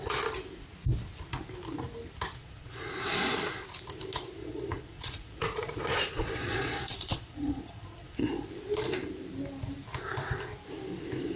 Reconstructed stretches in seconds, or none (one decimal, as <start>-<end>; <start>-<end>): 2.4-2.9; 4.4-8.5